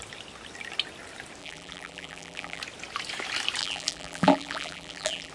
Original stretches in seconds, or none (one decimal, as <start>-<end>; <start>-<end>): 0.0-1.4; 2.6-3.6